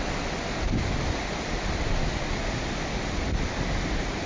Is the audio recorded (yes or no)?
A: yes